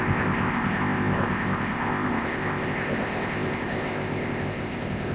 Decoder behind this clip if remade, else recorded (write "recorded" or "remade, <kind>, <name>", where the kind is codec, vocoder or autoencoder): remade, codec, ZipCodec